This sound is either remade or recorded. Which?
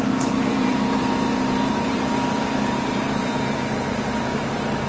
remade